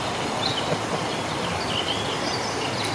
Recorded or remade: recorded